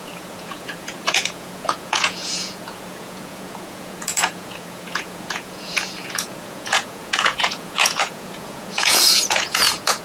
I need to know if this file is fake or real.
fake